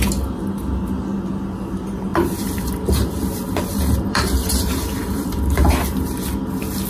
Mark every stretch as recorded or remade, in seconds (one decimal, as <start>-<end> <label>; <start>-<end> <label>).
0.0-2.1 recorded; 2.1-6.2 remade; 6.2-6.9 recorded